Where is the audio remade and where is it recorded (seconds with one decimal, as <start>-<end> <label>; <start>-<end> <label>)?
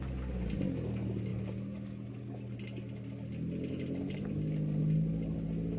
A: 0.0-5.8 recorded